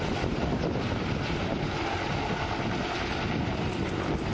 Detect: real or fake real